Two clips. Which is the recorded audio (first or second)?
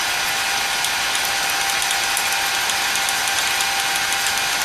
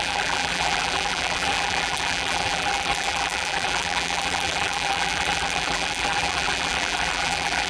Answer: first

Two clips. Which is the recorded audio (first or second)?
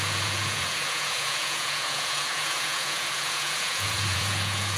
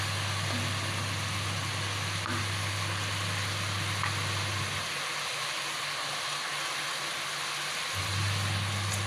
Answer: second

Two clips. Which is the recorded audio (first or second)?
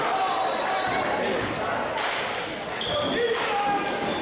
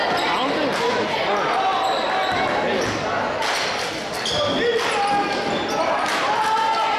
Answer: second